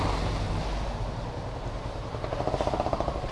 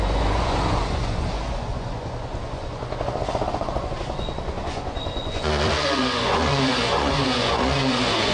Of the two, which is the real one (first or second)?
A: first